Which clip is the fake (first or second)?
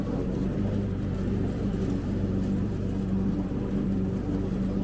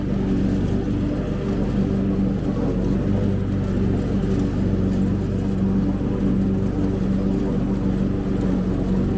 first